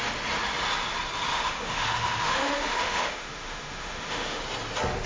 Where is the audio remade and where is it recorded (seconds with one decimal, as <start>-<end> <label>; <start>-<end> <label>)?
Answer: 0.0-1.3 recorded; 1.3-4.4 remade; 4.4-5.1 recorded